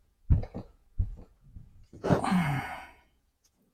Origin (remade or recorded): remade